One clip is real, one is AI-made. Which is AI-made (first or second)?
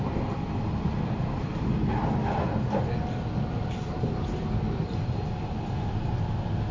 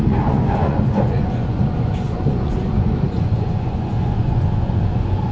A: second